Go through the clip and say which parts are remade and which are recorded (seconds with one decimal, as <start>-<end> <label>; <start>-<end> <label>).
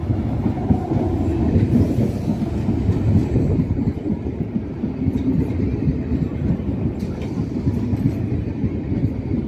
0.0-1.3 recorded; 1.3-1.8 remade; 1.8-3.2 recorded; 3.2-4.8 remade; 4.8-5.9 recorded; 5.9-7.1 remade; 7.1-9.5 recorded